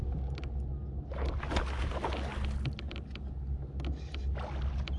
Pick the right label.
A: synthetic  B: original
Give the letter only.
B